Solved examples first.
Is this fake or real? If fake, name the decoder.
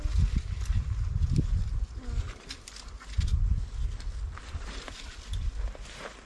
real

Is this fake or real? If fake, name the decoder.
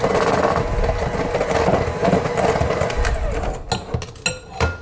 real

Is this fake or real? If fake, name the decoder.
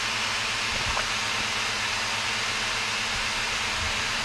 real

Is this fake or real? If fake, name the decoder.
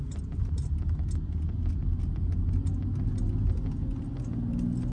real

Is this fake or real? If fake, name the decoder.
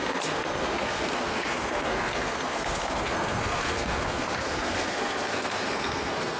fake, codec, SNAC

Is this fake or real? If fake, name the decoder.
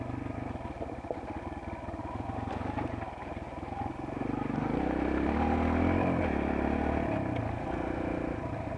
real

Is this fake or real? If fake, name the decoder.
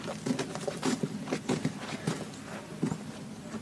real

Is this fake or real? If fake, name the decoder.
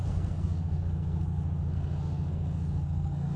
fake, codec, SNAC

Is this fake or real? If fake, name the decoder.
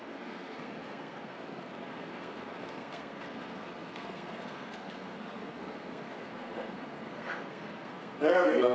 fake, codec, SNAC